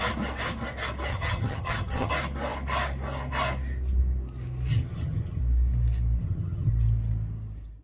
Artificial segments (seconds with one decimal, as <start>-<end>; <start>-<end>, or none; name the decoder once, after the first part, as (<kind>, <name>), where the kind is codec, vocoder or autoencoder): 1.1-2.1 (vocoder, HiFi-GAN); 4.7-5.4; 6.2-6.7